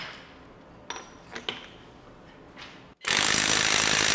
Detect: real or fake real